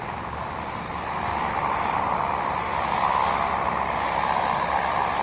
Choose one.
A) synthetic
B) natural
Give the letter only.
B